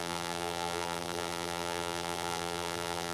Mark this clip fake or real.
fake